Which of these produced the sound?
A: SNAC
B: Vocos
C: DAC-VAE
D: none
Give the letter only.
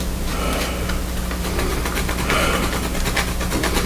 D